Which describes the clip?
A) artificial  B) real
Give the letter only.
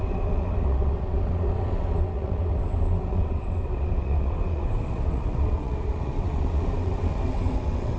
A